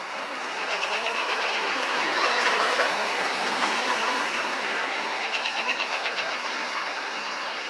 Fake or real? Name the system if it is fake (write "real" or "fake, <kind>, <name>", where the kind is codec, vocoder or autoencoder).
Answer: fake, codec, SNAC